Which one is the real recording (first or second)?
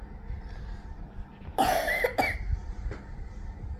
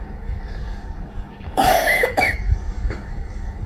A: first